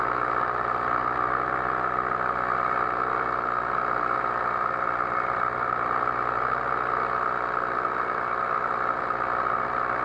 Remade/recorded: recorded